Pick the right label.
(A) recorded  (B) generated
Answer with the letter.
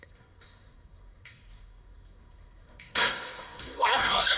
B